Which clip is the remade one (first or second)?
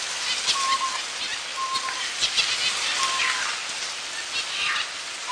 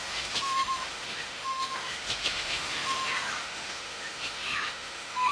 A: second